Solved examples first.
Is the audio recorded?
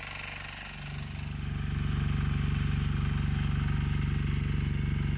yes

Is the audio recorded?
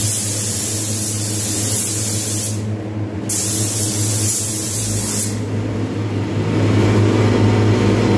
yes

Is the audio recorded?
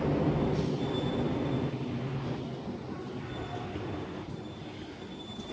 yes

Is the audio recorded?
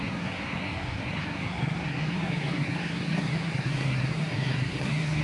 no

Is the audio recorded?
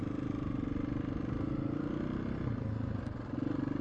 yes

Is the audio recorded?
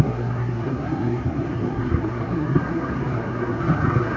no